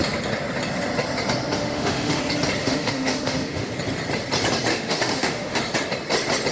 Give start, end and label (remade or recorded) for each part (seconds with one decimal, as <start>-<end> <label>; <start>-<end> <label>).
0.0-1.6 recorded; 1.6-2.2 remade; 2.2-2.6 recorded; 2.6-3.7 remade; 3.7-4.7 recorded; 4.7-5.6 remade; 5.6-6.5 recorded